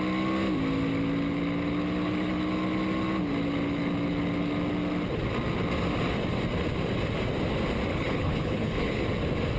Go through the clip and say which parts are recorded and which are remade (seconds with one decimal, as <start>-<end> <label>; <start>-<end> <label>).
0.0-7.9 recorded; 7.9-9.0 remade; 9.0-9.6 recorded